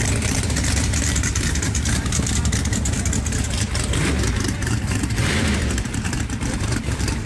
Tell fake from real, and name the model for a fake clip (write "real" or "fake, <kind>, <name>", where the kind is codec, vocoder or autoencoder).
fake, vocoder, BigVGAN v2